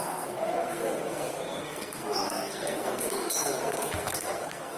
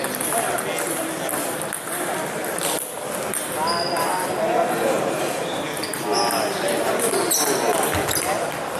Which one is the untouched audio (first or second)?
second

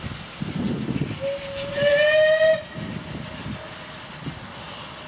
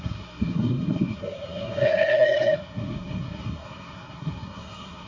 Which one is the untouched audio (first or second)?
first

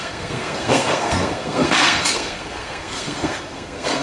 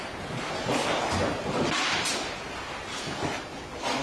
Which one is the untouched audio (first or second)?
second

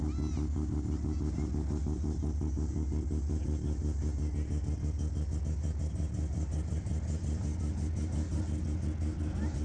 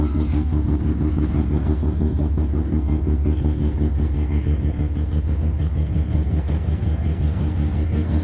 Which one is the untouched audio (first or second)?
first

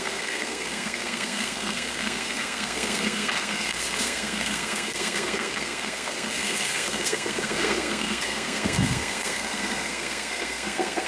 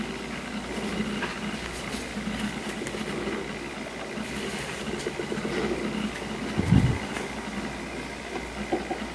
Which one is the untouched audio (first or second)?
second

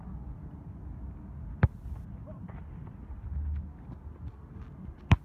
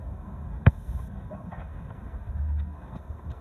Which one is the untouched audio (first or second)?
first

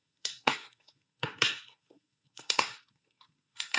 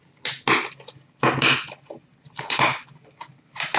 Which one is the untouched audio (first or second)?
second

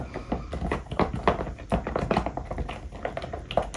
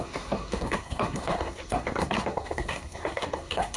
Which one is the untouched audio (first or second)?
first